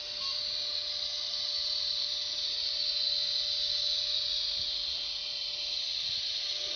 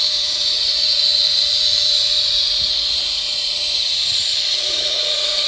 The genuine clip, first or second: first